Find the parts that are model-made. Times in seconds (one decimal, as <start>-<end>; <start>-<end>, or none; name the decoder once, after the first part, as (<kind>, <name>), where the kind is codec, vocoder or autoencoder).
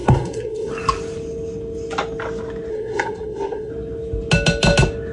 0.0-0.7 (codec, SNAC); 2.7-3.7